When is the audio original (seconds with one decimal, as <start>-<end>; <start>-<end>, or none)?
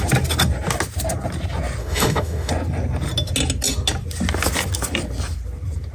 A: 0.0-1.8; 2.5-5.9